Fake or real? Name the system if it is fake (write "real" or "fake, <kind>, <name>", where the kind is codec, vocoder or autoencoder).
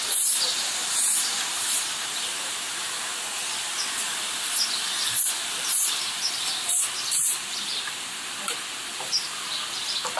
fake, vocoder, BigVGAN v2